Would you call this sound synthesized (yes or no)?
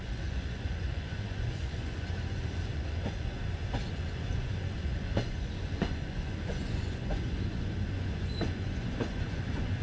yes